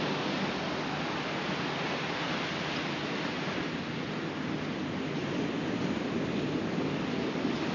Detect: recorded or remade recorded